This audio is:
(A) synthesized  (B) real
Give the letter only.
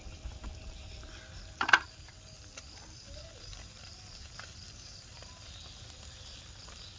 A